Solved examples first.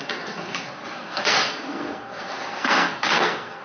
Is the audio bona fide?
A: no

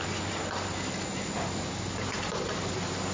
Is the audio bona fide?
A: yes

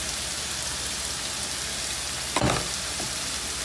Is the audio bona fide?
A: yes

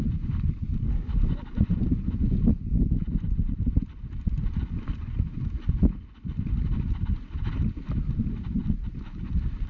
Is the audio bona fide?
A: yes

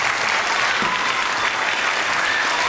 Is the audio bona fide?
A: yes